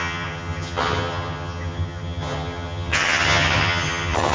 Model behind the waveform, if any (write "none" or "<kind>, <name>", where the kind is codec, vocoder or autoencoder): vocoder, HiFi-GAN